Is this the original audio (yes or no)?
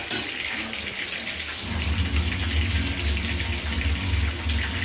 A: yes